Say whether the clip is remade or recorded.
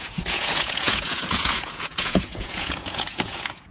remade